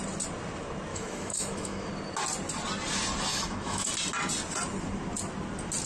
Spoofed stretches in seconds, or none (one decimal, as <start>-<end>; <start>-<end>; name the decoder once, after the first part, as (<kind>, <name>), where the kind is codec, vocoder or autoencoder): 0.9-1.9 (autoencoder, DAC-VAE); 3.3-3.9